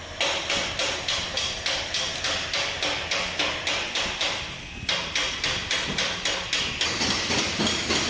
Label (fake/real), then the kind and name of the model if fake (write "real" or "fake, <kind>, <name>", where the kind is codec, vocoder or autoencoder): real